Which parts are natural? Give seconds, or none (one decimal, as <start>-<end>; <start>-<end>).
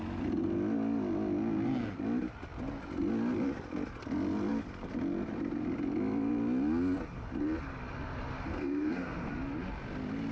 0.0-8.5; 9.3-10.3